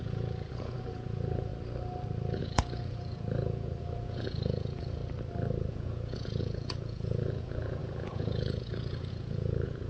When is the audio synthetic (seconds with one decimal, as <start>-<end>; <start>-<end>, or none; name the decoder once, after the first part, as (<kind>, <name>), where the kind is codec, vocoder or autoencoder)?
0.0-1.5 (vocoder, Vocos); 2.4-5.0; 5.7-9.9